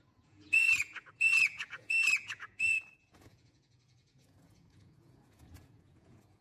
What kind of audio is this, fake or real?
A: fake